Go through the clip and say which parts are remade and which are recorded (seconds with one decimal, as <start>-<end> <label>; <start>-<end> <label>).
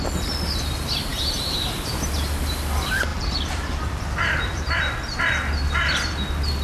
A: 0.0-3.1 recorded; 3.1-4.8 remade; 4.8-6.6 recorded